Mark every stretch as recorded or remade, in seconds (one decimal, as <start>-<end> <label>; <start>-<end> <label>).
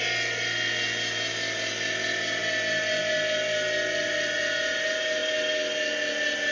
0.0-6.5 recorded